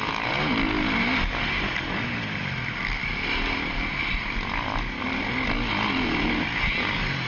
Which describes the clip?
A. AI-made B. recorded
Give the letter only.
B